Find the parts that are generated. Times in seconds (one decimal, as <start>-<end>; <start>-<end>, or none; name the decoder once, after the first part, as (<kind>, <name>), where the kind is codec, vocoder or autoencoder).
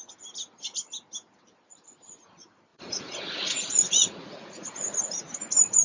2.7-5.0 (vocoder, Vocos)